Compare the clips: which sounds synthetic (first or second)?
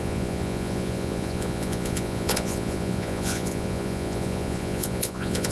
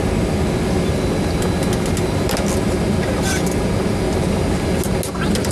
first